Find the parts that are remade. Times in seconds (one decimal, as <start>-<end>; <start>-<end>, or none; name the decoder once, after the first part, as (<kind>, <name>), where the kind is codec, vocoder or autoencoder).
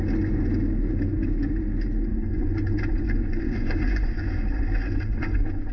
2.1-5.7 (vocoder, Vocos)